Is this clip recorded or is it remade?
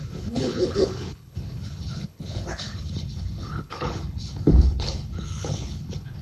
remade